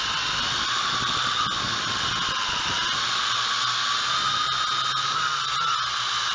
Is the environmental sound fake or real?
real